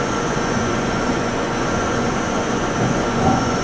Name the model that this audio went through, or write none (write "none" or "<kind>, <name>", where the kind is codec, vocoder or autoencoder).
vocoder, Vocos